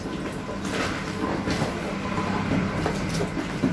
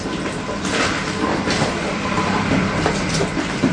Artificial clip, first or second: second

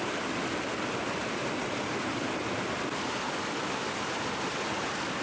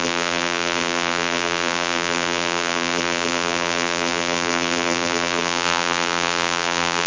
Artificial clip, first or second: second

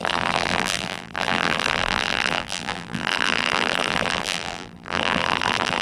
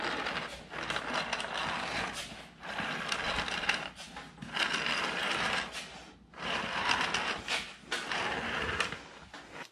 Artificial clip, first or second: first